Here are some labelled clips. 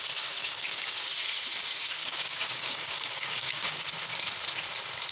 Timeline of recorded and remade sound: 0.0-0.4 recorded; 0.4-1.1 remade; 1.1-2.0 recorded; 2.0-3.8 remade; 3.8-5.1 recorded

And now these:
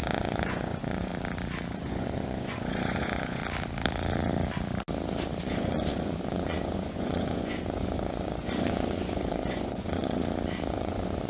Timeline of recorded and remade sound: 0.0-1.1 remade; 1.1-1.7 recorded; 1.7-3.4 remade; 3.4-5.4 recorded; 5.4-10.2 remade; 10.2-10.7 recorded; 10.7-11.3 remade

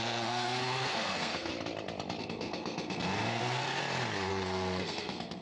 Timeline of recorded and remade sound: 0.0-1.5 remade; 1.5-2.2 recorded; 2.2-3.8 remade; 3.8-4.3 recorded; 4.3-5.4 remade

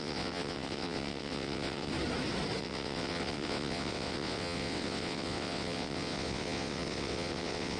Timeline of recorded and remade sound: 0.0-1.9 remade; 1.9-2.6 recorded; 2.6-7.8 remade

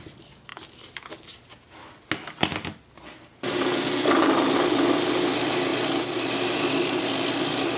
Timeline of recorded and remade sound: 0.0-7.8 recorded